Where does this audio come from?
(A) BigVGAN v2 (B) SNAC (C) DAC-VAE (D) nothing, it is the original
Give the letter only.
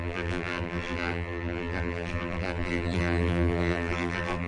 A